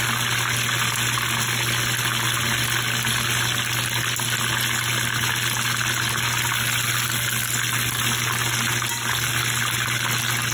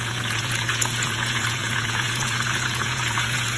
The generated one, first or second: second